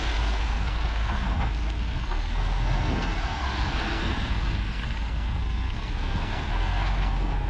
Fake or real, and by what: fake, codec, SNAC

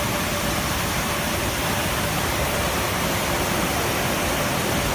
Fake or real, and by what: real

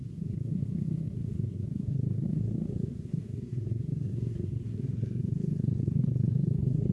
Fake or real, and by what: fake, codec, SNAC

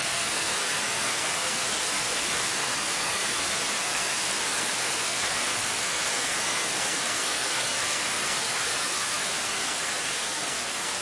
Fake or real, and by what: fake, codec, SNAC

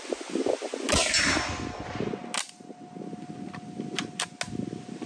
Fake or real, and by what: real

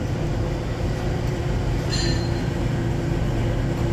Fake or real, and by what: real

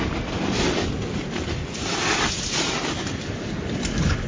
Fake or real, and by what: real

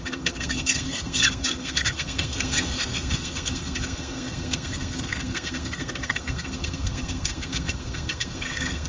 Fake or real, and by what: fake, codec, SNAC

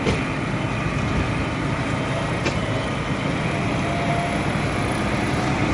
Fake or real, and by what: real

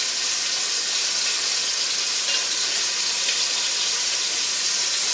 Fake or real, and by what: real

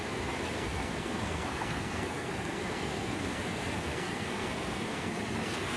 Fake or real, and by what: fake, codec, SNAC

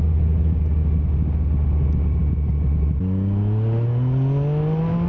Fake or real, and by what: real